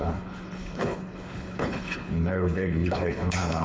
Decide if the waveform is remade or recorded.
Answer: remade